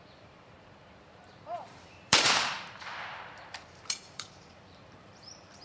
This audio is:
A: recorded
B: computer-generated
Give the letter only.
B